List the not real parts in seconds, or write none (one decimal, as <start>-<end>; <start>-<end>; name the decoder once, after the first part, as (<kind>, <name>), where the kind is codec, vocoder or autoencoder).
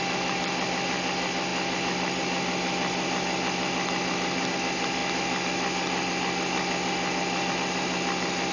none